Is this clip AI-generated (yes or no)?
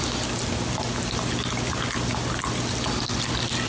no